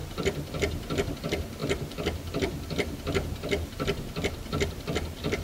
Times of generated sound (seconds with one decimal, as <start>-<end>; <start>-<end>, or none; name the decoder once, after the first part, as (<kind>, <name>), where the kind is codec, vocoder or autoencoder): 0.0-1.1 (vocoder, BigVGAN v2); 1.6-4.8